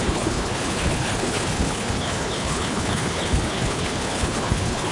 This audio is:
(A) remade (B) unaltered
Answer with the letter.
A